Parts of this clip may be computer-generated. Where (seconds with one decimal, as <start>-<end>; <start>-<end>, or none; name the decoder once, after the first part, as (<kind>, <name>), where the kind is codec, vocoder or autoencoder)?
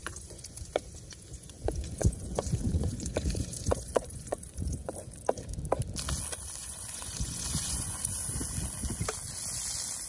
0.0-4.9 (vocoder, Vocos); 6.6-8.0